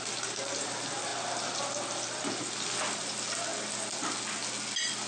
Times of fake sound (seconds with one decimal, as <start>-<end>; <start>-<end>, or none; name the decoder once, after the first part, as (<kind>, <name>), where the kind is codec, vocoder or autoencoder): none